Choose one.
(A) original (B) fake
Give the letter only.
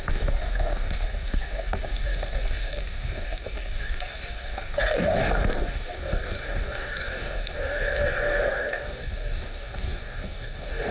B